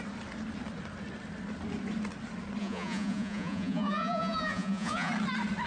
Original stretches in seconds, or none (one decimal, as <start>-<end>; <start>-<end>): 0.0-2.6; 5.1-5.7